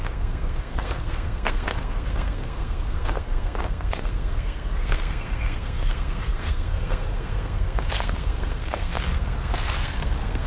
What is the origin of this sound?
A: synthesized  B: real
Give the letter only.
A